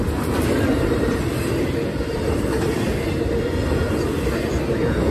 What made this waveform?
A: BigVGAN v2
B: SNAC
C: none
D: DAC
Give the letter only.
C